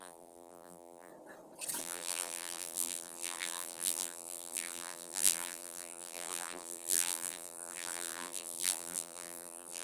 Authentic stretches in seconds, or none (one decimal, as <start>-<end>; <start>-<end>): 1.1-1.8